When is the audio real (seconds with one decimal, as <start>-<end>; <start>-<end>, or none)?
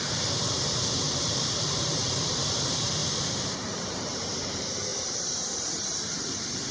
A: 3.0-3.6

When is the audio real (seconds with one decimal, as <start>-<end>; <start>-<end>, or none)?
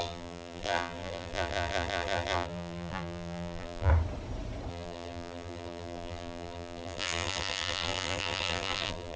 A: 3.9-4.7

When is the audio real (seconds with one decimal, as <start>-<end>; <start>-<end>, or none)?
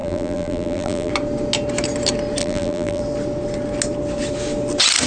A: 1.1-2.4; 3.0-5.1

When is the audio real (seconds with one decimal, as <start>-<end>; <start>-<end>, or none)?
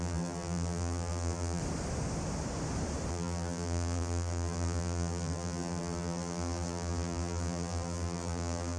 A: 1.6-3.1